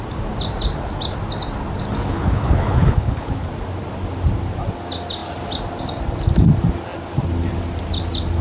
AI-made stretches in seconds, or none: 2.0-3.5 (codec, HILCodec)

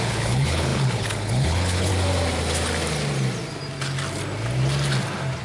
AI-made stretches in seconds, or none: 0.0-1.9 (codec, HILCodec)

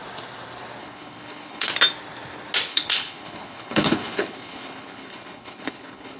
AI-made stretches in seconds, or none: 0.8-1.7 (codec, HILCodec); 2.7-6.2

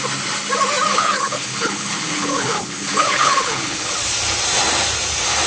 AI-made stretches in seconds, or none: 0.9-3.9 (codec, HILCodec)

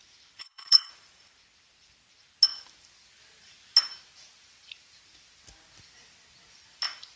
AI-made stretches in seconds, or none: 0.4-0.9 (codec, HILCodec)

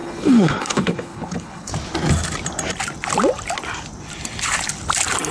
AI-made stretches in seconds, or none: 0.0-1.7 (codec, HILCodec)